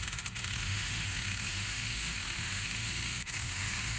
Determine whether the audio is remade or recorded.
remade